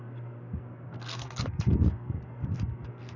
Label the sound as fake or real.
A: fake